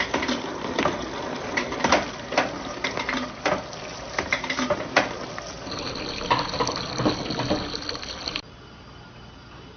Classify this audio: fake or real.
real